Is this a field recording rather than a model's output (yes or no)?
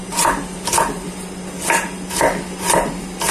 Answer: yes